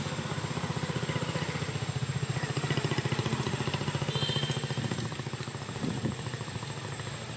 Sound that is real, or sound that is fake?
real